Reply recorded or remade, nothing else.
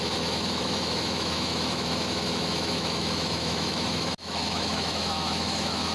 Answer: remade